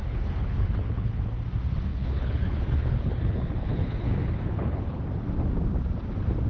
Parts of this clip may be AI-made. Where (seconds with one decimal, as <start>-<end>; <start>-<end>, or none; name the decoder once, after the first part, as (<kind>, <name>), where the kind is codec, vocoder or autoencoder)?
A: 0.0-1.2 (codec, HILCodec); 1.9-5.0